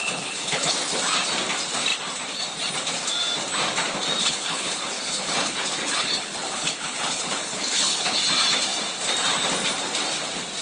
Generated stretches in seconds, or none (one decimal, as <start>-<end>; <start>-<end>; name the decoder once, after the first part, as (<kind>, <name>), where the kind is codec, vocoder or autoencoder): 0.0-0.7 (codec, HILCodec); 4.2-8.2